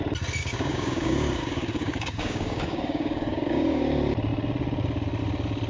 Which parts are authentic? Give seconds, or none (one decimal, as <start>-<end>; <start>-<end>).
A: 0.0-0.4; 3.8-5.7